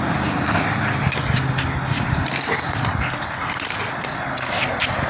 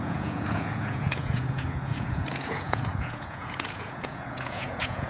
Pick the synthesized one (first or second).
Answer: second